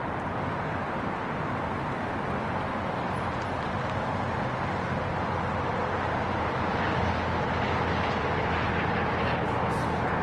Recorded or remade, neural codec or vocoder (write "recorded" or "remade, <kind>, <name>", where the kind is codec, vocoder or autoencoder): recorded